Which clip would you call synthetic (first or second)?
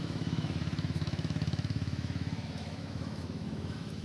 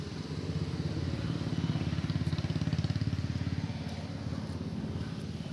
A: first